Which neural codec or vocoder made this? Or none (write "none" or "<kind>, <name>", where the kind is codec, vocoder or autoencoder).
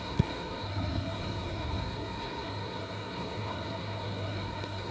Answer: codec, SNAC